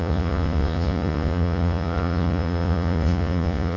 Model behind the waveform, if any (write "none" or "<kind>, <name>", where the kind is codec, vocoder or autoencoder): vocoder, Vocos